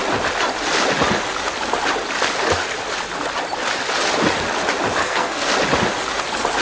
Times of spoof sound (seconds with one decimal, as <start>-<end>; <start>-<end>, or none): 5.0-5.5